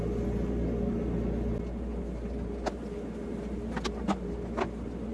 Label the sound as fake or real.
real